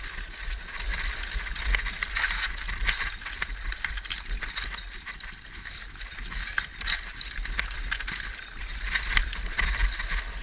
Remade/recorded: recorded